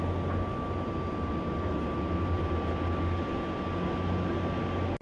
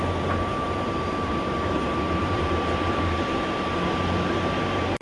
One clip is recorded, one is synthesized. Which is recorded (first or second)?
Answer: first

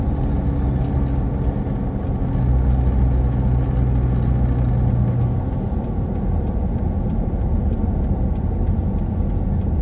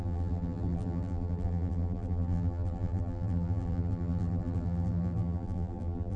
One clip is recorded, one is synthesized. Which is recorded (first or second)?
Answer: first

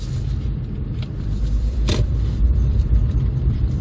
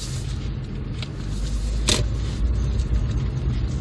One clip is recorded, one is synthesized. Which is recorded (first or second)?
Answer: second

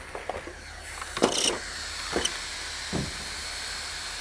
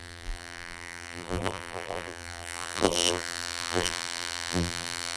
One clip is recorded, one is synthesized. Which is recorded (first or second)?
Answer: first